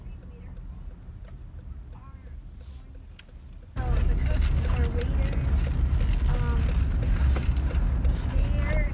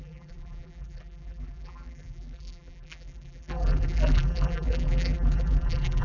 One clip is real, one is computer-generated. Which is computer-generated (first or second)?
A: second